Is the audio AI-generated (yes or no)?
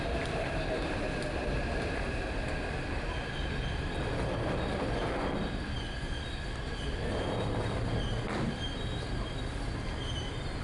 no